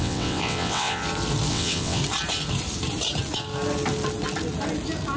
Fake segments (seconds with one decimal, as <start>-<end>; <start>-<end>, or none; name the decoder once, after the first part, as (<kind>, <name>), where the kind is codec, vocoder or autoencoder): 0.0-1.0 (vocoder, WaveNeXt); 1.5-2.0